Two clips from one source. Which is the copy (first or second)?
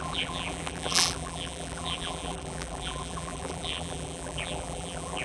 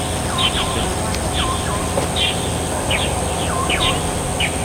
first